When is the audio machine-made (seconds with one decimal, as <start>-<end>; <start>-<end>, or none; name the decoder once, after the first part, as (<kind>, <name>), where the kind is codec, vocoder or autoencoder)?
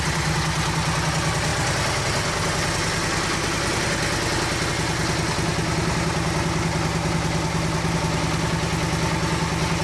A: none